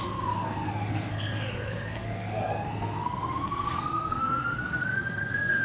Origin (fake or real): fake